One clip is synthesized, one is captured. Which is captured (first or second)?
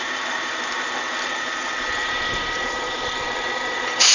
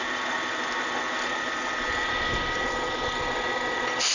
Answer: second